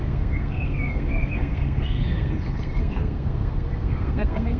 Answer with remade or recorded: remade